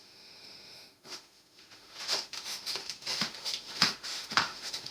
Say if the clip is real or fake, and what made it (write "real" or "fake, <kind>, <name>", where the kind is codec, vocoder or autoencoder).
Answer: fake, autoencoder, DAC-VAE